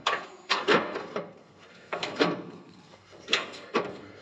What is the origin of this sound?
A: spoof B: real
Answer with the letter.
A